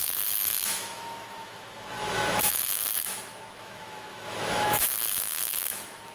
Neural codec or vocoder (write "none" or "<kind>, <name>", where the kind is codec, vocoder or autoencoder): autoencoder, DAC-VAE